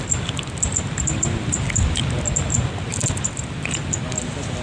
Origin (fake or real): fake